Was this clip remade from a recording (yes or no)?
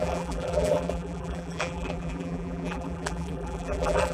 yes